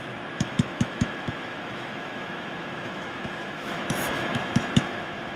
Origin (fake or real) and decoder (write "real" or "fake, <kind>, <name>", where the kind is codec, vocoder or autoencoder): fake, autoencoder, DAC-VAE